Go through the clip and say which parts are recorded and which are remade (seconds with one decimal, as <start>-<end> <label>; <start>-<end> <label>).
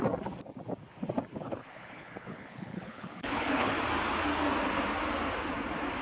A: 0.0-1.3 recorded; 1.3-3.7 remade; 3.7-6.0 recorded